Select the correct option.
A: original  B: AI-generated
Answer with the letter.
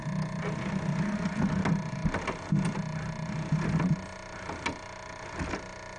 A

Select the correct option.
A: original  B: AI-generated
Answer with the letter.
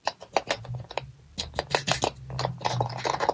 A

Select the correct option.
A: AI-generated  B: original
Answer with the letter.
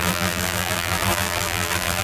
A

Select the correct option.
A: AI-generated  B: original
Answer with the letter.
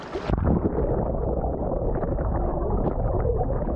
B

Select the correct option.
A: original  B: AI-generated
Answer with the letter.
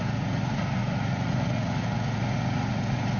B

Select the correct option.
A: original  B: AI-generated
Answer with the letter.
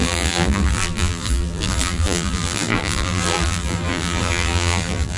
B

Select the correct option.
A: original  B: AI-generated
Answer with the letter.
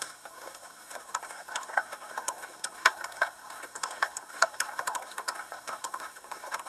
B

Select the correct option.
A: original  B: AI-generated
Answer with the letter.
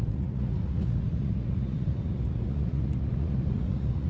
B